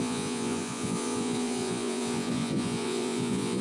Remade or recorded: remade